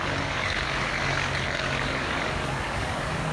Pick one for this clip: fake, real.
fake